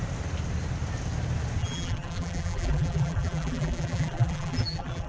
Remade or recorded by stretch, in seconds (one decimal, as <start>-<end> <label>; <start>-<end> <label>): 0.0-1.6 recorded; 1.6-5.1 remade